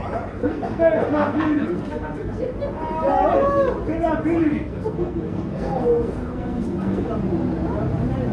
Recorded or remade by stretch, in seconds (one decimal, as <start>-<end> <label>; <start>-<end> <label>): 0.0-0.4 recorded; 0.4-2.4 remade; 2.4-4.4 recorded; 4.4-7.1 remade; 7.1-8.3 recorded